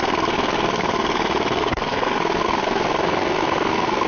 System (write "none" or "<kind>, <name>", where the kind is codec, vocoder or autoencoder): codec, SNAC